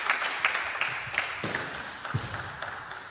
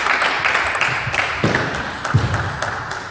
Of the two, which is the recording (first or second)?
second